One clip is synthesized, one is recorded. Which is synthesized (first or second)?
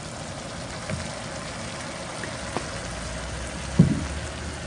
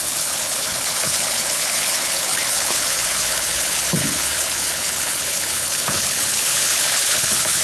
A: second